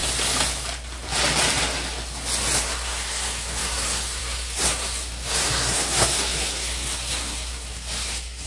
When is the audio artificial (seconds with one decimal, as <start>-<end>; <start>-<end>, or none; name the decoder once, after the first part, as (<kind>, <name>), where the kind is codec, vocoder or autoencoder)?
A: 2.6-8.5 (codec, SNAC)